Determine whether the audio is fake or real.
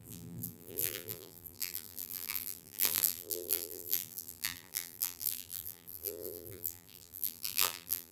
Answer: fake